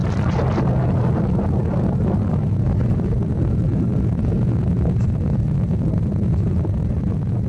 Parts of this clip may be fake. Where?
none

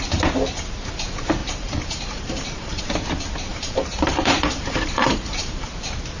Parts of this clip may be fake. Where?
1.4-2.8 (vocoder, BigVGAN v2); 3.5-5.7

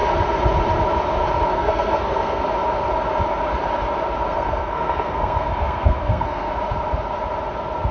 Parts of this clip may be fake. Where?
1.5-2.4 (codec, SNAC); 4.3-6.5

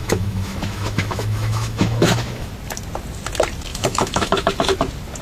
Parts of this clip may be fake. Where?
0.0-2.5 (autoencoder, DAC-VAE); 3.7-4.5

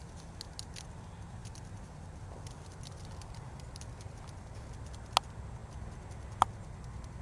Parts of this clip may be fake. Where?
1.4-4.7 (vocoder, BigVGAN v2)

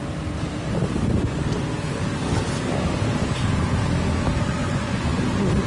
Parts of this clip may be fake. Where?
4.6-5.2 (vocoder, Vocos)

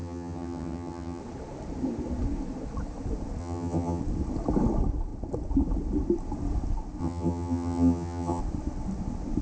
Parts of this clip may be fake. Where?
0.0-1.2 (vocoder, HiFi-GAN); 3.4-4.0; 7.0-8.4

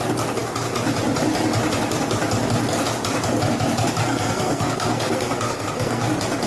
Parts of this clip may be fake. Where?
4.0-6.1 (codec, SNAC)